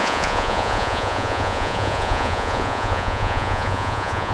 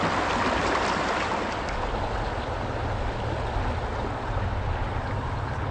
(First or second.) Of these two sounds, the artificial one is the first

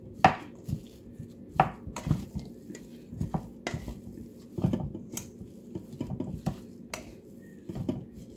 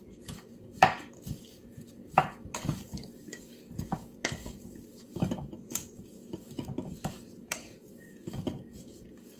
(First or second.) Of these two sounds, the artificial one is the second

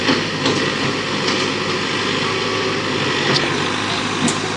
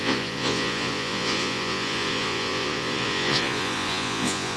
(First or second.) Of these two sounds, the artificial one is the second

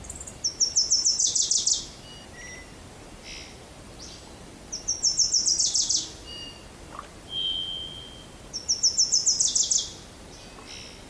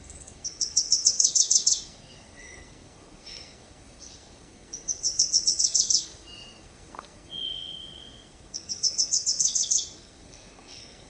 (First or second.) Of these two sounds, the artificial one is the second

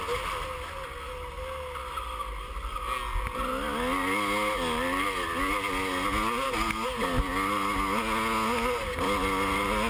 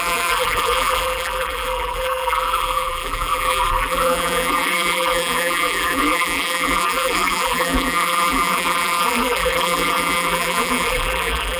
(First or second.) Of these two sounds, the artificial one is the second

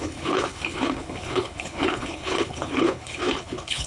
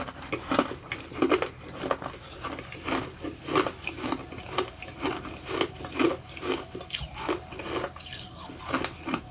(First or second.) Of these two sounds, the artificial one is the first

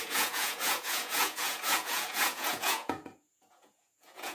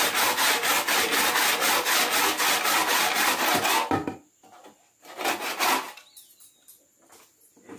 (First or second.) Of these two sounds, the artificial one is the first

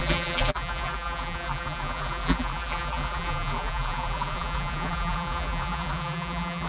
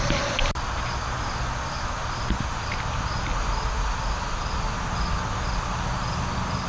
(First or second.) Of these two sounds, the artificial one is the first